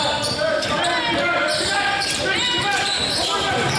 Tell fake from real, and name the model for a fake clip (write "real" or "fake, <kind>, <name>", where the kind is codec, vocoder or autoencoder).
real